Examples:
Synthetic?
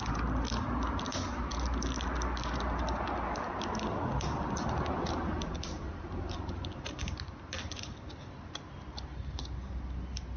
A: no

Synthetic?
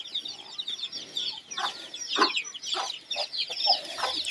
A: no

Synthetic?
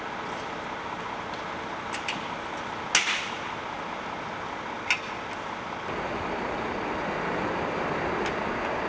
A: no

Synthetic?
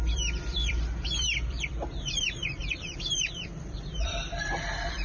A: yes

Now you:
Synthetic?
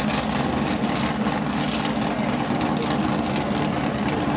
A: no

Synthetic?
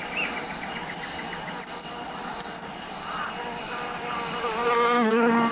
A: no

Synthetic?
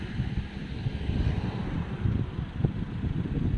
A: no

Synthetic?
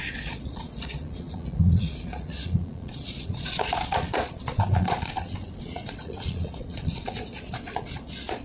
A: yes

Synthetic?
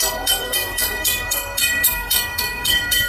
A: yes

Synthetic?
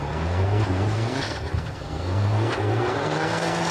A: yes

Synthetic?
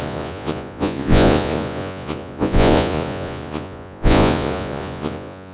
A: yes